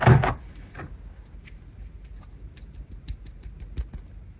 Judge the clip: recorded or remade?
recorded